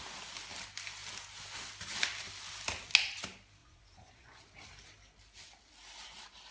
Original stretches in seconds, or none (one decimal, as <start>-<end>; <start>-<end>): 0.0-3.6; 4.4-6.5